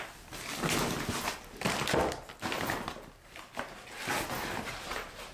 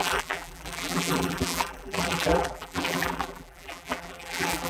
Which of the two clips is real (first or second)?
first